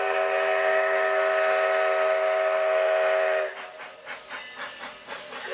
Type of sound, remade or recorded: recorded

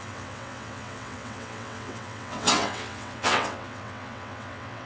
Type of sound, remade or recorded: remade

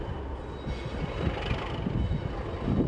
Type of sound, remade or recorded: recorded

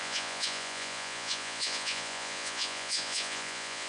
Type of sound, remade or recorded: remade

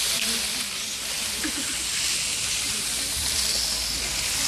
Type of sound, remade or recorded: recorded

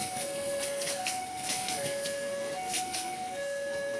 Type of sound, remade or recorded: remade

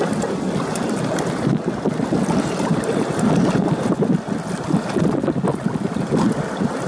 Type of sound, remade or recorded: recorded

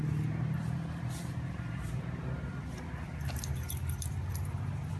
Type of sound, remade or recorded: remade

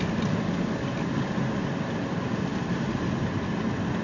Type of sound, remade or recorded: recorded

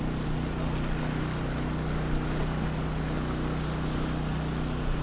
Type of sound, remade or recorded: recorded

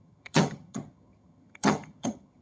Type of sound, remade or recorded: remade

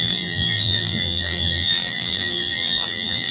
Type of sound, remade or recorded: remade